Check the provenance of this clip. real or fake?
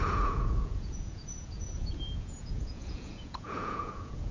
fake